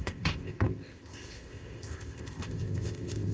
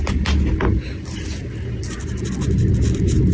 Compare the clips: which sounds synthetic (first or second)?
first